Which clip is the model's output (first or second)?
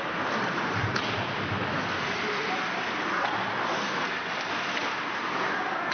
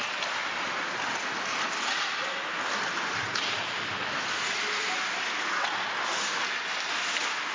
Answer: first